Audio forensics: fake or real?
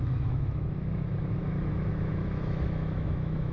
fake